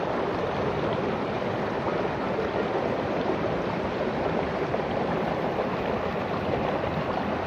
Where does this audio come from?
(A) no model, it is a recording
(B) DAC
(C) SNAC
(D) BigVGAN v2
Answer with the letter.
D